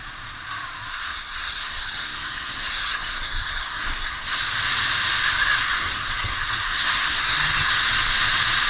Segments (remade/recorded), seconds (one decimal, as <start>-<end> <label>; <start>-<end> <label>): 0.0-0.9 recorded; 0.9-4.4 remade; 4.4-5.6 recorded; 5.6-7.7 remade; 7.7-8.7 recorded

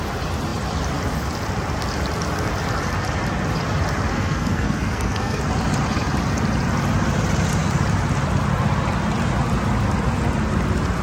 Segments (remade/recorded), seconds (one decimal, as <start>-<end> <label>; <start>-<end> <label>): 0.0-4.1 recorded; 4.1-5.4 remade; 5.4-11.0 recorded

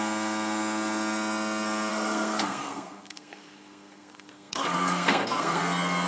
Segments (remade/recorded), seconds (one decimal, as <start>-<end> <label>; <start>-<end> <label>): 0.0-1.9 recorded; 1.9-5.6 remade; 5.6-6.1 recorded

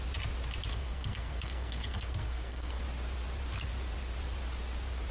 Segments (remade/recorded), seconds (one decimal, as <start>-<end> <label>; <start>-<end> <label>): 0.0-0.7 recorded; 0.7-2.8 remade; 2.8-5.1 recorded